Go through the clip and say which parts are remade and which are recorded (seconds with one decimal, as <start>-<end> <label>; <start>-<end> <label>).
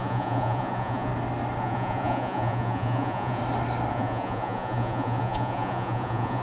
0.0-1.1 remade; 1.1-1.6 recorded; 1.6-3.4 remade; 3.4-3.9 recorded; 3.9-6.4 remade